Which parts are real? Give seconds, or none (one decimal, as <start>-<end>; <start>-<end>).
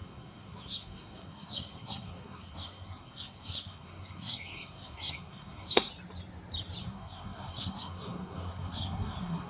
5.9-6.8